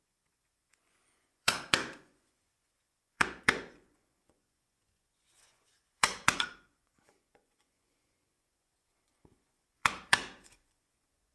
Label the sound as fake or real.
fake